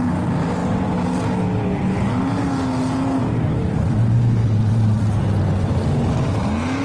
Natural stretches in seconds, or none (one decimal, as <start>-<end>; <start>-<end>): 0.0-3.2; 5.0-6.8